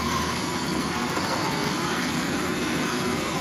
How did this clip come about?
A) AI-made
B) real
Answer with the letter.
A